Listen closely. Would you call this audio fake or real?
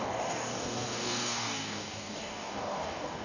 fake